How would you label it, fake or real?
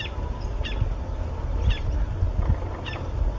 real